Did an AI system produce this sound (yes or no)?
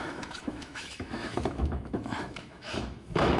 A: yes